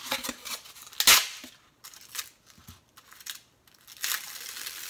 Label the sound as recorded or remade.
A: recorded